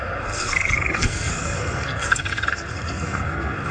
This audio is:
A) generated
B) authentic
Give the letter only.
A